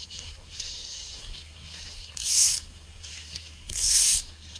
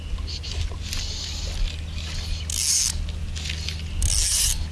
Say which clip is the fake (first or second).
first